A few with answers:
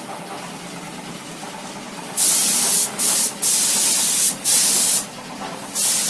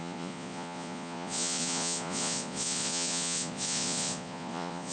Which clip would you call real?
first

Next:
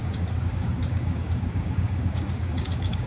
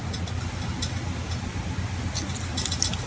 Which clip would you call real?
second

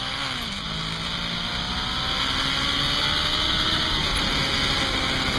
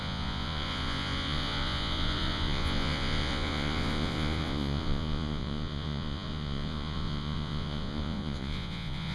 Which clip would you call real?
first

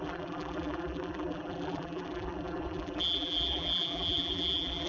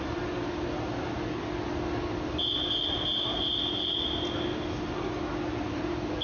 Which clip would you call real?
second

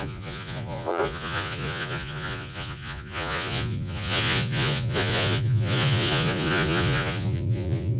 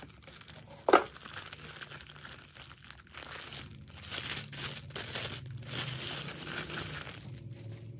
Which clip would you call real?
second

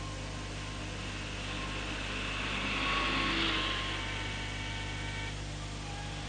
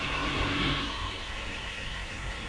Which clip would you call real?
first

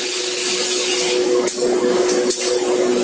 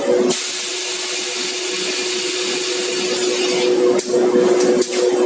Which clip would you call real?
second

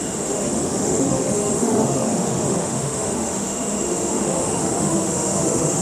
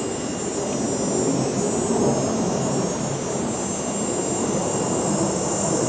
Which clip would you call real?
second